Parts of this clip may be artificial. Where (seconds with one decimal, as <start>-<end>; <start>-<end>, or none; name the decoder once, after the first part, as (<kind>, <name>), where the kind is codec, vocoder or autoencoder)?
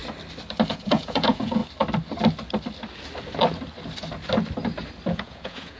0.7-1.6 (vocoder, Vocos); 5.1-5.8